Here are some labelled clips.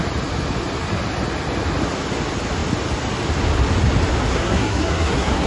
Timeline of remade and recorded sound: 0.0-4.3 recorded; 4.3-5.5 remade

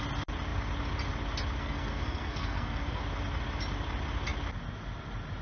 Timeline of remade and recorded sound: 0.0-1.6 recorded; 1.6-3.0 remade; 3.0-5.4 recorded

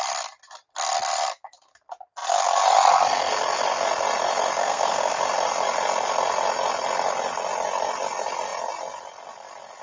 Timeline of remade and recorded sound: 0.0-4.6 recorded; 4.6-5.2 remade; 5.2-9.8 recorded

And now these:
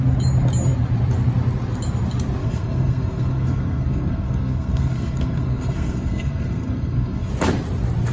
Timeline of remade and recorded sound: 0.0-2.4 recorded; 2.4-7.3 remade; 7.3-8.1 recorded

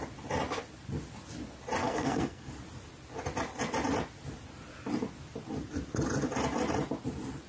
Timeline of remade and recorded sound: 0.0-1.8 recorded; 1.8-2.5 remade; 2.5-7.5 recorded

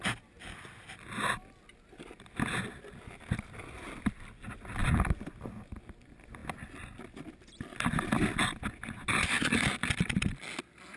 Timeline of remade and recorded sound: 0.0-11.0 recorded

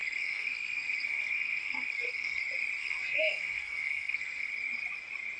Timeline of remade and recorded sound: 0.0-2.4 remade; 2.4-2.8 recorded; 2.8-4.5 remade; 4.5-5.4 recorded

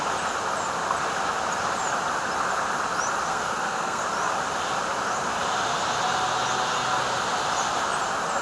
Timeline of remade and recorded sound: 0.0-3.3 recorded; 3.3-4.0 remade; 4.0-8.4 recorded